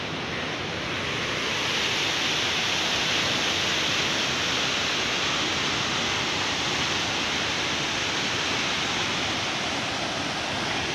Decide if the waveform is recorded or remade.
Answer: recorded